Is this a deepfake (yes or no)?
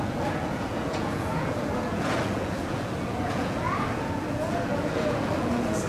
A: yes